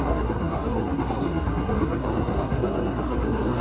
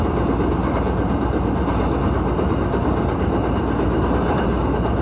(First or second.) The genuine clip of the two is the second